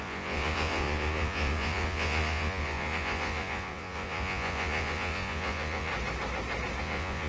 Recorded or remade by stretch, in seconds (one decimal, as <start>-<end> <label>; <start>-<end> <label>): 0.0-5.9 remade; 5.9-6.8 recorded; 6.8-7.3 remade